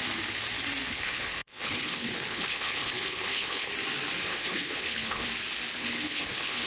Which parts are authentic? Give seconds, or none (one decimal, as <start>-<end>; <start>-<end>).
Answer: 0.0-0.9; 3.7-4.2; 5.3-5.8